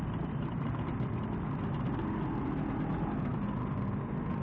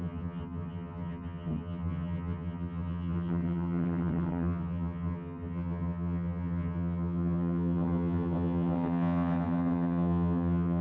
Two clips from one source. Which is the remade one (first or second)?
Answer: second